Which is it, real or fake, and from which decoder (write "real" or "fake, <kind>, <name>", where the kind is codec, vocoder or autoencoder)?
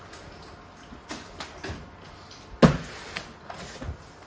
real